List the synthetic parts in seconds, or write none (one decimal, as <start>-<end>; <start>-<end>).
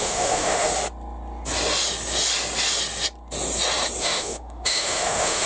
0.0-0.7; 4.0-5.5